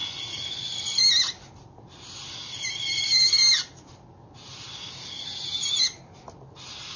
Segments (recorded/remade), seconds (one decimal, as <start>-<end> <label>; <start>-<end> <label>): 0.0-7.0 recorded